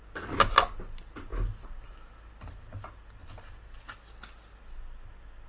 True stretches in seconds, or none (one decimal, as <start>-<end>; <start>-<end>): 0.0-5.5

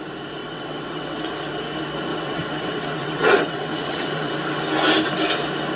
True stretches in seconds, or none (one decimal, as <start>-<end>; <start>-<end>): 0.0-0.4; 1.3-2.1; 4.3-5.8

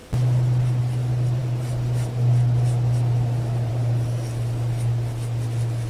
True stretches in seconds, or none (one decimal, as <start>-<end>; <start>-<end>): 0.0-5.9

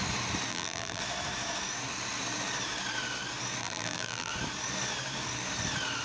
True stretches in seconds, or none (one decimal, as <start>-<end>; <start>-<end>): 0.0-0.5; 1.0-3.6; 4.3-6.0

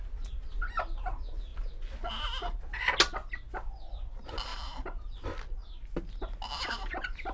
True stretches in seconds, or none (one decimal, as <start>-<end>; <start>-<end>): 0.0-7.3

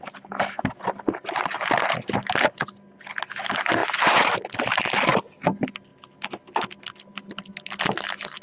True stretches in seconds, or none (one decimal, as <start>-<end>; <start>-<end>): 0.0-8.4